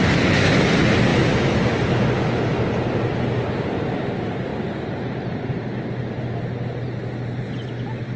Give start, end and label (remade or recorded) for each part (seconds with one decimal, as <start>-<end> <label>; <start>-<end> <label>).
0.0-8.2 recorded